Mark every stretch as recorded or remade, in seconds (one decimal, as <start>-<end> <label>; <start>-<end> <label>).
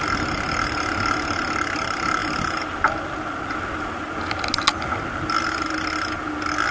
0.0-6.7 recorded